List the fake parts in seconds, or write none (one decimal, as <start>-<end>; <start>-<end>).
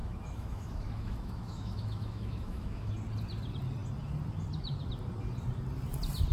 0.0-2.9